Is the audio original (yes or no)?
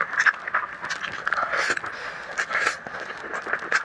yes